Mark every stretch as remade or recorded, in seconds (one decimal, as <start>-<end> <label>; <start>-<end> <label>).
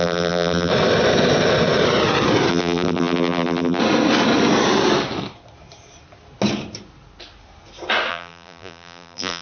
0.0-0.7 remade; 0.7-2.5 recorded; 2.5-3.8 remade; 3.8-8.1 recorded; 8.1-9.4 remade